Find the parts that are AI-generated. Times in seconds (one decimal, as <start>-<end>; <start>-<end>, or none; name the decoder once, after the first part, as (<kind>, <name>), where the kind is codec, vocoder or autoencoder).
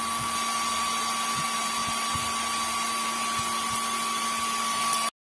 none